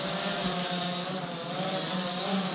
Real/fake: fake